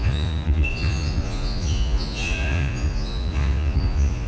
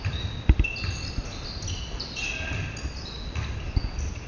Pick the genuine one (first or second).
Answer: second